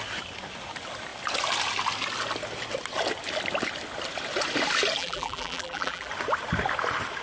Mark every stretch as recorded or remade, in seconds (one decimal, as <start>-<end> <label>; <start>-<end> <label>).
0.0-5.0 recorded; 5.0-6.1 remade; 6.1-7.2 recorded